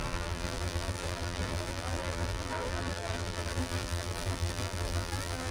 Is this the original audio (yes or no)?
no